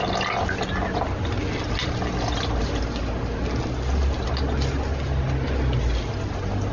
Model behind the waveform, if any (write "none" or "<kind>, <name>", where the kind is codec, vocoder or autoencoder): none